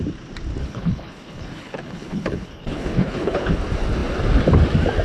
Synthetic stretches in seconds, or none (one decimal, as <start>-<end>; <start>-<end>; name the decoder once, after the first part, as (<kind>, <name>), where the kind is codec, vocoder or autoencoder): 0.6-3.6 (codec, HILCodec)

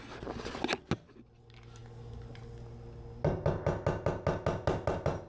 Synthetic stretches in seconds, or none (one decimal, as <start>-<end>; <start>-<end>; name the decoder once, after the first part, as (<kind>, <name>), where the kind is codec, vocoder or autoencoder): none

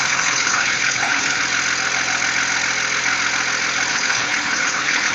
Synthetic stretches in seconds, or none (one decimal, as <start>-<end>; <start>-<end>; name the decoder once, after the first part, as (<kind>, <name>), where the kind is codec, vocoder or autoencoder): 0.0-1.4 (codec, HILCodec); 3.9-5.1